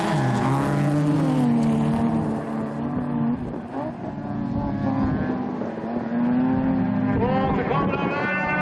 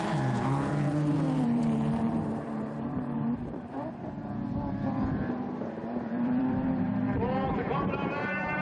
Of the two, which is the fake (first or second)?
second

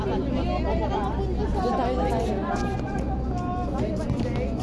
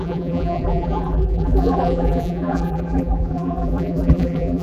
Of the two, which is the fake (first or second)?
second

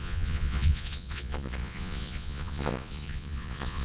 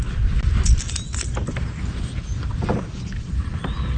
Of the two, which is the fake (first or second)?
first